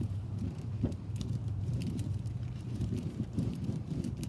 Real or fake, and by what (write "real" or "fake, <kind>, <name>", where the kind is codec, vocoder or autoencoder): fake, vocoder, BigVGAN v2